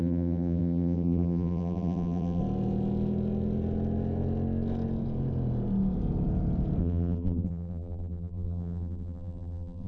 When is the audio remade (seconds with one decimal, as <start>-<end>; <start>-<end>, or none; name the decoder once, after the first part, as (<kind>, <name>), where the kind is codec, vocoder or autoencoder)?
0.0-2.4 (vocoder, BigVGAN v2); 6.8-9.9